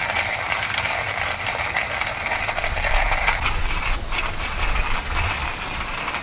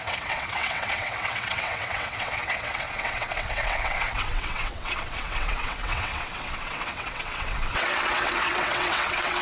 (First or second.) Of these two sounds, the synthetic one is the second